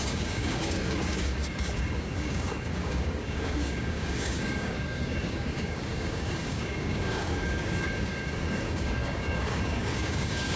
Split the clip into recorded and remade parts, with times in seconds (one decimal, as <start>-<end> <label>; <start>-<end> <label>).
0.0-10.6 remade